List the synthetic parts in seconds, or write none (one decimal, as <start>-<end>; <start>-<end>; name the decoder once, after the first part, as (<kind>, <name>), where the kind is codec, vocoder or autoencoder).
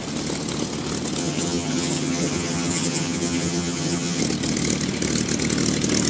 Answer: 1.2-4.2 (vocoder, HiFi-GAN)